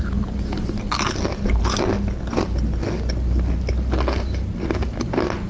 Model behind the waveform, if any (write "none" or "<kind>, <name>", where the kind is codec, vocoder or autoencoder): none